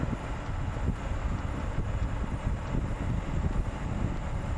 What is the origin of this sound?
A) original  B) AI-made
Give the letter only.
A